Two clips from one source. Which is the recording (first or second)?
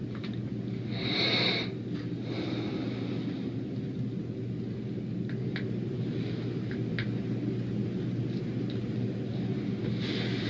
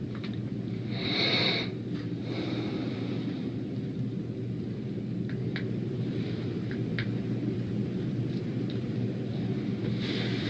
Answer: first